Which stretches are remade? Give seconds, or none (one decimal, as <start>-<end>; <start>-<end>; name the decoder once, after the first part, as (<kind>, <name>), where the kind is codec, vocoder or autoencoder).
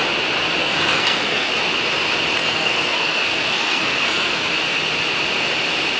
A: 0.6-1.5 (codec, SNAC); 2.4-4.5